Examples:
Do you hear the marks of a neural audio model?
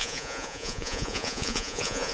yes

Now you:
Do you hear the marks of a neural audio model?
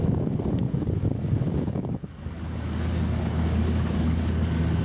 yes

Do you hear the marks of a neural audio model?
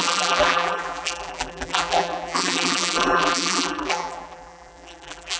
yes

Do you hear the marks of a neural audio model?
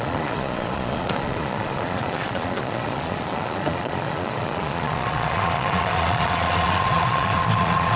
yes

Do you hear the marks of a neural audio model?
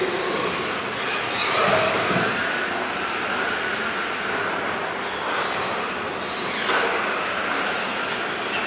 no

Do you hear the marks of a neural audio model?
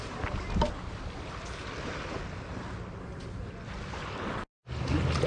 no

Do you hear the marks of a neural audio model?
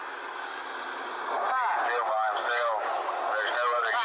no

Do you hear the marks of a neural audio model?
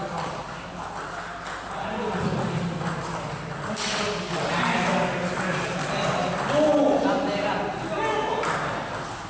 no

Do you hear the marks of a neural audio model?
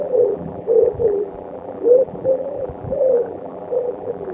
yes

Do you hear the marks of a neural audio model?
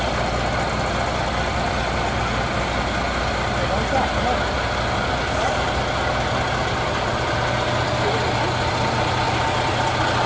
no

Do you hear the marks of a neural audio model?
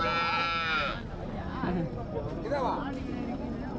no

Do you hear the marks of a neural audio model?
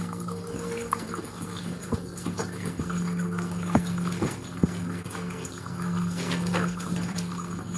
yes